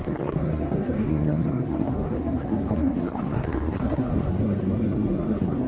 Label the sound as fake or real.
fake